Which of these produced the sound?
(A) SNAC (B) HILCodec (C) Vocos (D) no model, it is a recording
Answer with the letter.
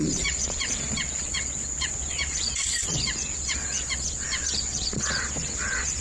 C